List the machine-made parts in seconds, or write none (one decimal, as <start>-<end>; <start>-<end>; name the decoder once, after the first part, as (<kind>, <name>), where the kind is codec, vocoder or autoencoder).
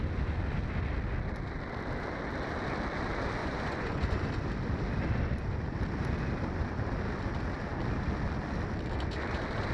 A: 3.4-4.1 (vocoder, Vocos)